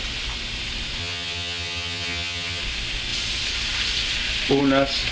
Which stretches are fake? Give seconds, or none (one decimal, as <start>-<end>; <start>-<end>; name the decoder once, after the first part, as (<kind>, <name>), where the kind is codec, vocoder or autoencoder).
1.0-2.6 (vocoder, HiFi-GAN)